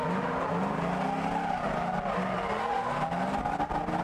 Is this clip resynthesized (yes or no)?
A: no